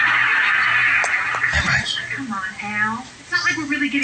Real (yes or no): yes